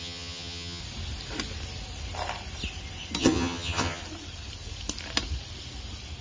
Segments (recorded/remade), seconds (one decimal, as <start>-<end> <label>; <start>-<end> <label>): 0.0-0.8 remade; 0.8-3.2 recorded; 3.2-4.0 remade; 4.0-6.2 recorded